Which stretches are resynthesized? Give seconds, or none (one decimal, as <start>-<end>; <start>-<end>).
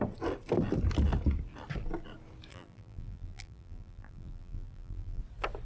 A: 2.5-5.2